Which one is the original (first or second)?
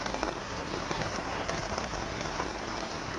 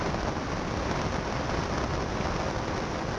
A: second